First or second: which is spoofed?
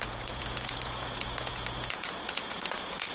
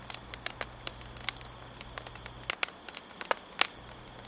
first